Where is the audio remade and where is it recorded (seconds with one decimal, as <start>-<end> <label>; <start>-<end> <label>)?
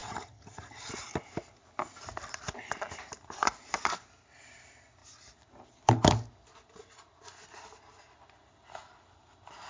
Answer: 0.0-0.9 remade; 0.9-9.7 recorded